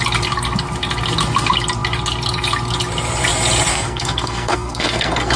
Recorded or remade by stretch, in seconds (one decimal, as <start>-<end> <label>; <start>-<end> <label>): 0.0-3.7 recorded; 3.7-5.4 remade